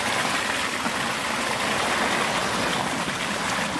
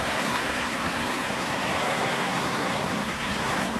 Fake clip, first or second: second